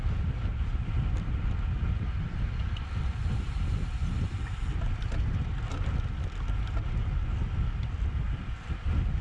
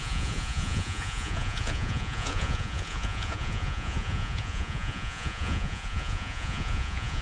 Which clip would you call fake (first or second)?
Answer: second